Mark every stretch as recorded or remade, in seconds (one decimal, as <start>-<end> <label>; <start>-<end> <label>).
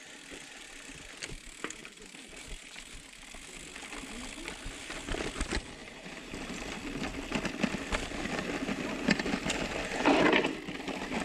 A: 0.0-1.8 recorded; 1.8-2.9 remade; 2.9-5.8 recorded; 5.8-6.6 remade; 6.6-11.2 recorded